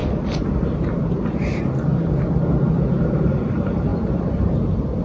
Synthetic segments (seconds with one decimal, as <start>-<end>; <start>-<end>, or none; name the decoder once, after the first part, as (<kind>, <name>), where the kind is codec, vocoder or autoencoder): 0.5-1.9 (vocoder, BigVGAN v2); 2.7-5.0